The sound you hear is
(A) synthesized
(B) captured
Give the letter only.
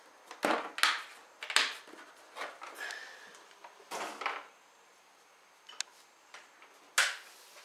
B